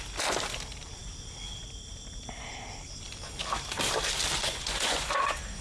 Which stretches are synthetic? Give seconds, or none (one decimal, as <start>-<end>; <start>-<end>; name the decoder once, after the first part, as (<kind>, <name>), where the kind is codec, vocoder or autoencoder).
4.4-5.6 (vocoder, Vocos)